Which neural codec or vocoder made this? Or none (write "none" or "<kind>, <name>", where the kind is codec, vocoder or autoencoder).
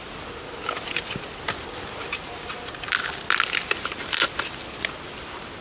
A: none